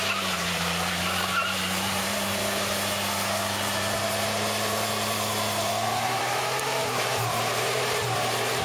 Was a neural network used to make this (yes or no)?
yes